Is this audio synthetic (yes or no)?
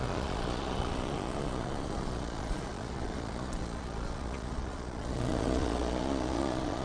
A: yes